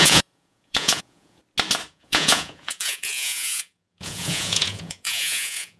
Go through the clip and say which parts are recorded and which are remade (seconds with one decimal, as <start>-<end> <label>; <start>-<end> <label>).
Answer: 0.0-1.4 remade; 1.4-1.9 recorded; 1.9-5.8 remade